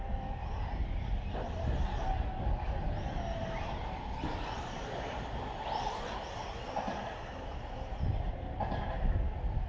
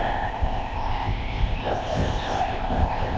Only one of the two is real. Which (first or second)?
first